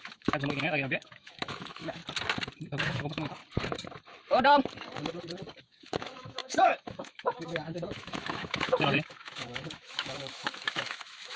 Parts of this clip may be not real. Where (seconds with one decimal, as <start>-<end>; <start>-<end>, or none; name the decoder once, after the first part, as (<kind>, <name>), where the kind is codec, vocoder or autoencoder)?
0.0-2.0 (autoencoder, DAC-VAE); 2.8-3.4; 5.6-11.4